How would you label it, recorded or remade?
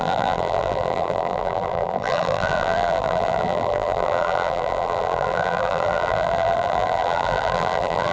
remade